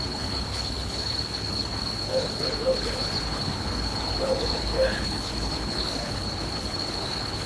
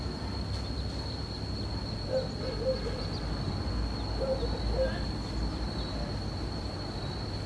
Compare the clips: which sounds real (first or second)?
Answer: second